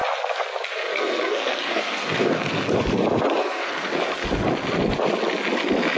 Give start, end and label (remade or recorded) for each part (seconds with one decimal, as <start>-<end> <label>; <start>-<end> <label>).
0.0-0.7 recorded; 0.7-2.3 remade; 2.3-3.4 recorded; 3.4-3.9 remade; 3.9-6.0 recorded